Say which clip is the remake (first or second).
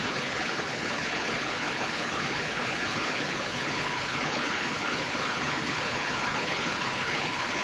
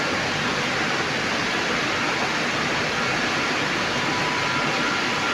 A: first